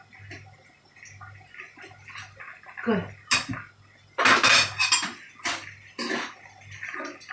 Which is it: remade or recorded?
recorded